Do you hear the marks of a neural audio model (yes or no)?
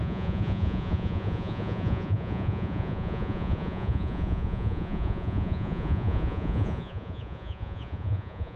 yes